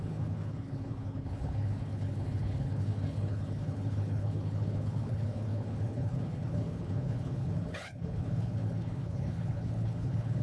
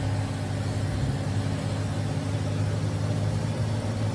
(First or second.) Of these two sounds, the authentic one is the second